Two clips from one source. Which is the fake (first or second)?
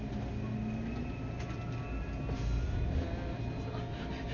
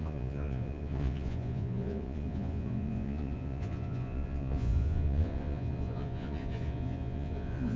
second